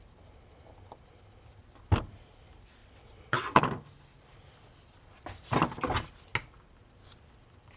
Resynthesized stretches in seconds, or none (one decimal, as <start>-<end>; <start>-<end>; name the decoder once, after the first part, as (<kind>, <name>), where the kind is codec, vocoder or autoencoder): 2.8-3.6 (vocoder, WaveNeXt)

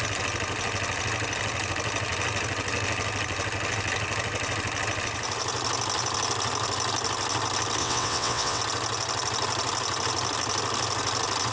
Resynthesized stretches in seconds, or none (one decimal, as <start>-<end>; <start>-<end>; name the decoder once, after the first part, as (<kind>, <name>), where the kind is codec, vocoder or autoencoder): 7.8-8.6 (vocoder, WaveNeXt)

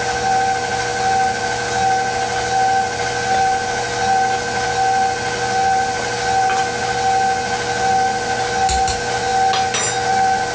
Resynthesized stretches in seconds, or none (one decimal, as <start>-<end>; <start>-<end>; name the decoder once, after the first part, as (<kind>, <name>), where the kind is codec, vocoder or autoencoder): none

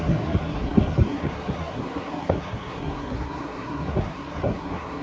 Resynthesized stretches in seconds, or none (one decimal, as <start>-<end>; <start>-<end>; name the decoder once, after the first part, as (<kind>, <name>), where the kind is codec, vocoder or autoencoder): 0.0-5.0 (codec, SNAC)

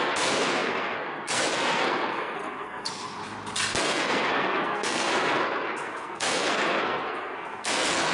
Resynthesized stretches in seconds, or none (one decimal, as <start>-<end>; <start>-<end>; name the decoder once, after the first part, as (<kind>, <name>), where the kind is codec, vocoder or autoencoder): 0.0-3.2 (codec, SNAC); 3.8-8.1

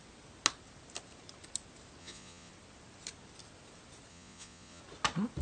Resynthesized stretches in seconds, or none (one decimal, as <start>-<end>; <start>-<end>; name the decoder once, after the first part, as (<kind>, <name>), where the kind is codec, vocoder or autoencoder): 2.0-2.5 (vocoder, Vocos); 4.1-4.8

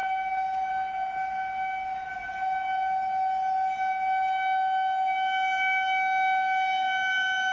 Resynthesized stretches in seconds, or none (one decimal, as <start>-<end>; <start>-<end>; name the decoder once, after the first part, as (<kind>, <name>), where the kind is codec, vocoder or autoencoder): none